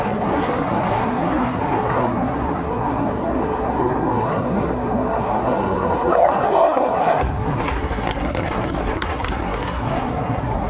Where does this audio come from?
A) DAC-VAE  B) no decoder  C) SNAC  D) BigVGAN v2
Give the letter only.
C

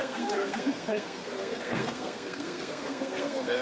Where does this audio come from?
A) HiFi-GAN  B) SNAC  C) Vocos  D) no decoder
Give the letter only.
B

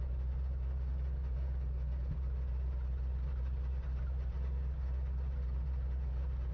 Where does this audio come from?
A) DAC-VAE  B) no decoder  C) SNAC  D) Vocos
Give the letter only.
B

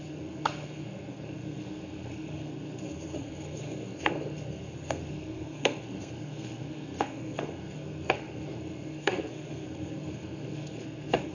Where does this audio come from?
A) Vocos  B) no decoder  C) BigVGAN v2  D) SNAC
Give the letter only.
D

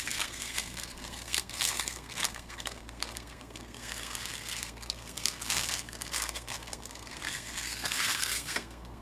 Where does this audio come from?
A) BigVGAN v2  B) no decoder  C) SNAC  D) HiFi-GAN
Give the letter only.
C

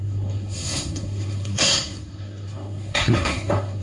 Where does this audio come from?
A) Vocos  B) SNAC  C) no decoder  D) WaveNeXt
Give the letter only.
B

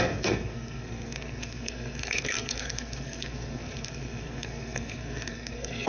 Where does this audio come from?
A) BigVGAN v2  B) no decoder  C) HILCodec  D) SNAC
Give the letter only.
D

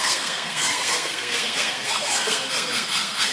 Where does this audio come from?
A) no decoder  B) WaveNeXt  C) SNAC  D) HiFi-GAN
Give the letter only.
C